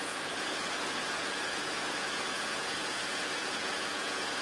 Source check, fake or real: fake